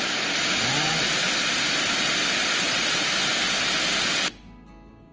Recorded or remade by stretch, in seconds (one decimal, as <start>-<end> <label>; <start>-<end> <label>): 0.0-5.1 recorded